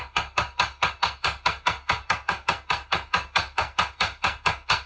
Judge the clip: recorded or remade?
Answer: remade